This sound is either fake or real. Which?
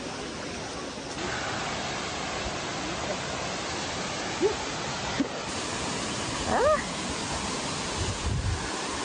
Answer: real